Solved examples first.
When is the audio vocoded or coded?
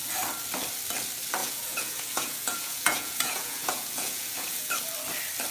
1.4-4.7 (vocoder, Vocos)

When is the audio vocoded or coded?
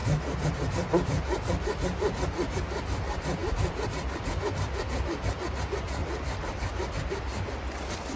3.4-4.3 (vocoder, BigVGAN v2); 6.0-6.9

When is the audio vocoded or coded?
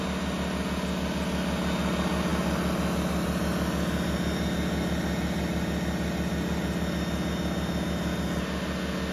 none